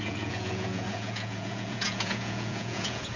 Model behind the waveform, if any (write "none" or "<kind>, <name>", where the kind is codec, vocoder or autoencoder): vocoder, Vocos